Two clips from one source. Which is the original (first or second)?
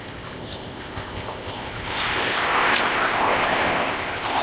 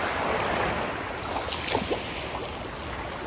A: second